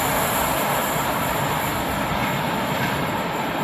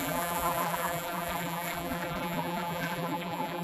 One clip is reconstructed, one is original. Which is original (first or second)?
first